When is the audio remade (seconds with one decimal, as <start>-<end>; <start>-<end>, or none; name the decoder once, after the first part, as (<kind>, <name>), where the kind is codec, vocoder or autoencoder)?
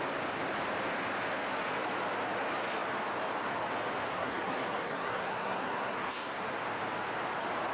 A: 4.1-6.4 (codec, SNAC)